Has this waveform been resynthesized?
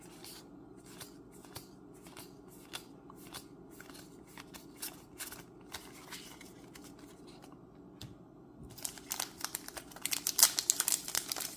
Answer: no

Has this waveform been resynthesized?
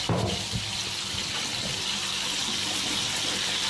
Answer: no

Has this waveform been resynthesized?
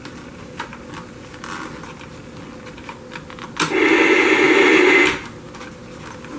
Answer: no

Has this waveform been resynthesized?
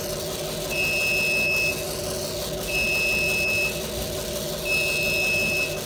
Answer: no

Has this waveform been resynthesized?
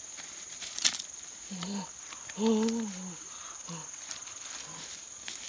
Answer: no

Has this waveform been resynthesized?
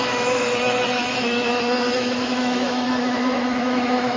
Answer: yes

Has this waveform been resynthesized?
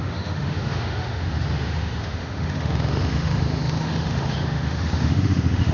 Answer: yes